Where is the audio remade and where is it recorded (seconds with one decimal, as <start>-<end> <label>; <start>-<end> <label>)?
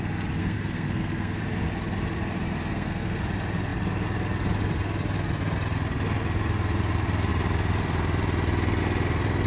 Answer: 0.0-0.4 recorded; 0.4-1.4 remade; 1.4-2.7 recorded; 2.7-3.2 remade; 3.2-9.5 recorded